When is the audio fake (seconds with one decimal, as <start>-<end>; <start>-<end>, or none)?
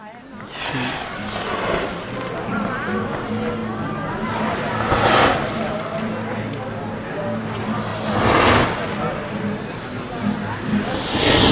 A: none